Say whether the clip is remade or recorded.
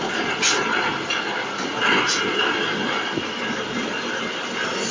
recorded